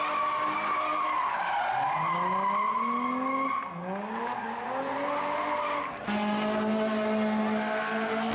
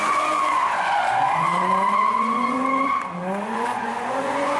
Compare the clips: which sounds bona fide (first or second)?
first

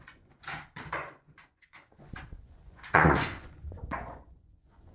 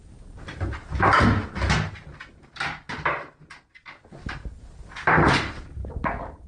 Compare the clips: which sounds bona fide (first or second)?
second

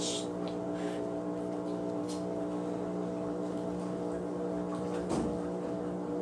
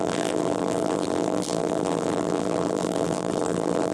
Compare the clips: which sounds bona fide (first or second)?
first